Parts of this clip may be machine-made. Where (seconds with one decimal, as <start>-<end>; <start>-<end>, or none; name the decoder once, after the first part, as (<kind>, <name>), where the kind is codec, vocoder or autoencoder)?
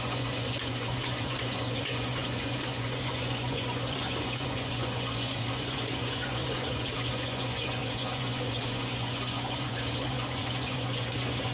0.0-11.5 (vocoder, Vocos)